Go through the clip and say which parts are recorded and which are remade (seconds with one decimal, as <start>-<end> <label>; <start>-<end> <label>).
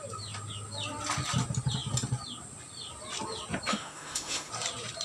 0.0-3.7 recorded; 3.7-4.5 remade; 4.5-5.0 recorded